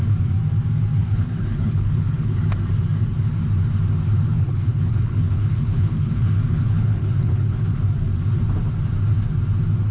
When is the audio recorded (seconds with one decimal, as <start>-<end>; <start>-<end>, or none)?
0.0-1.0; 2.3-4.3; 7.8-9.9